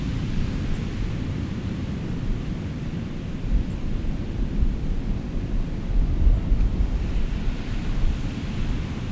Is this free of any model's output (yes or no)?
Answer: yes